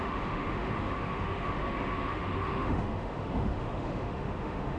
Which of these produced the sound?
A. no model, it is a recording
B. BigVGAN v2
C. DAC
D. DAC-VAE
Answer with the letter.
D